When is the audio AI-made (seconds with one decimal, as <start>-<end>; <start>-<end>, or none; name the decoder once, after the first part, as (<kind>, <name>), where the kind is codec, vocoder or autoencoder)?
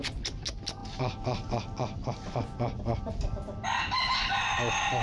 none